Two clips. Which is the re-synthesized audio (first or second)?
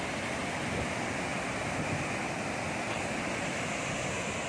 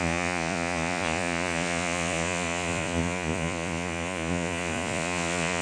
second